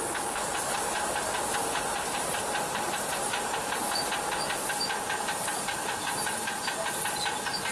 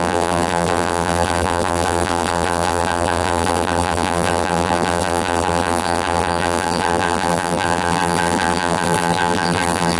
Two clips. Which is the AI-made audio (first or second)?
second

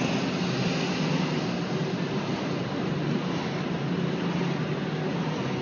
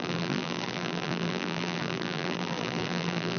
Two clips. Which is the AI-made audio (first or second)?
second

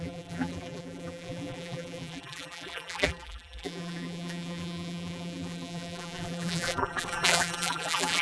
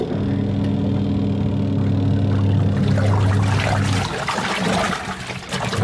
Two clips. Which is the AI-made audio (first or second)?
first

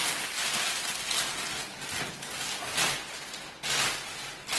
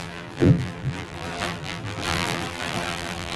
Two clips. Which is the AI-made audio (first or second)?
second